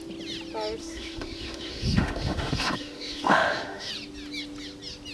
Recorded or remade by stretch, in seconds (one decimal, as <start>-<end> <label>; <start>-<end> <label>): 0.0-0.8 recorded; 0.8-3.9 remade; 3.9-5.1 recorded

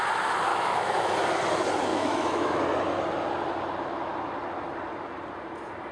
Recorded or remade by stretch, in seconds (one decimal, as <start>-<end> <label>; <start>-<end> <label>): 0.0-0.5 recorded; 0.5-1.1 remade; 1.1-1.9 recorded; 1.9-2.6 remade; 2.6-5.9 recorded